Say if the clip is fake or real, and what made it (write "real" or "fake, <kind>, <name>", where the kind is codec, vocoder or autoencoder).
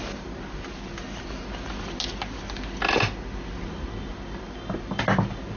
real